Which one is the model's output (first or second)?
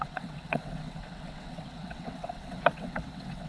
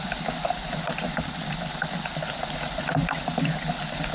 first